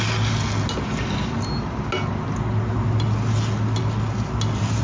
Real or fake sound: real